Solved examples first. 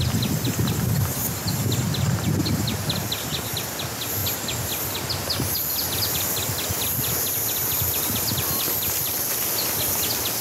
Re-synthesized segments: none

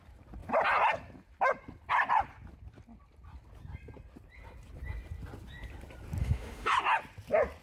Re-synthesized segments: 6.2-6.7

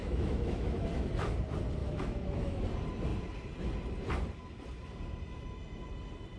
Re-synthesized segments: 0.0-1.1; 1.8-2.6